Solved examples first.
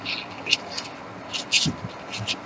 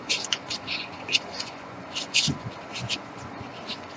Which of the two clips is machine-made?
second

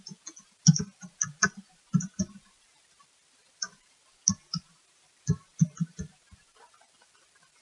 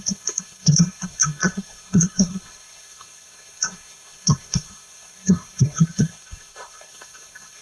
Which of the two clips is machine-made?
second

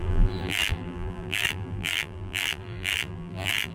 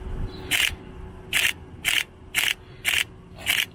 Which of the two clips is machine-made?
first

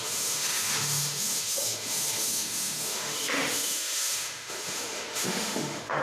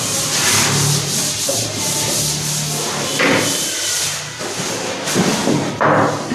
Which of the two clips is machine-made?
first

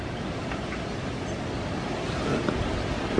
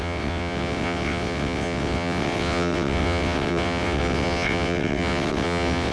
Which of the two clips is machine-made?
second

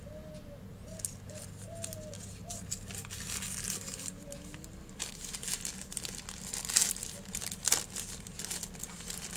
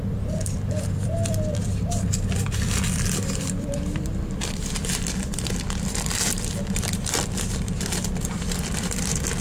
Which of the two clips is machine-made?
second